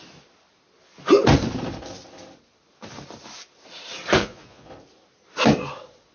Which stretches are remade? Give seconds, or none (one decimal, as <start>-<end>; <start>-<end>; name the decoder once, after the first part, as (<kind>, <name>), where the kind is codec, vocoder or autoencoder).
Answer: 4.2-4.7 (vocoder, Vocos)